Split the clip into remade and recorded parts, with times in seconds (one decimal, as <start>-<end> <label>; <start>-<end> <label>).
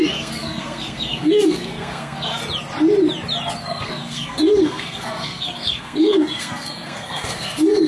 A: 0.0-2.4 remade; 2.4-3.6 recorded; 3.6-7.9 remade